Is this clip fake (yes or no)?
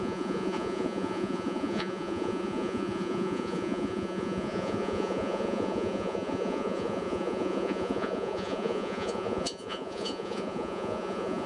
yes